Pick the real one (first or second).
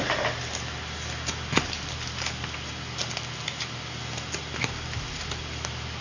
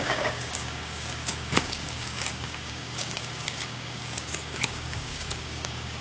first